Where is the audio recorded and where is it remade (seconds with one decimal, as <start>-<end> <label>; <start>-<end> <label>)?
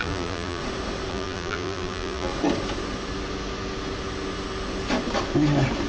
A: 0.0-0.6 remade; 0.6-1.1 recorded; 1.1-2.3 remade; 2.3-5.9 recorded